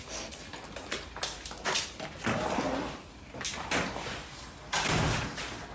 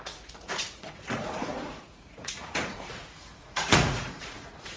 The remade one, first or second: second